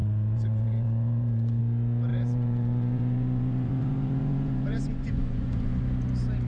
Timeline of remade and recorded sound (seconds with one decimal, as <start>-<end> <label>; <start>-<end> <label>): 0.0-1.6 remade; 1.6-2.1 recorded; 2.1-5.8 remade; 5.8-6.5 recorded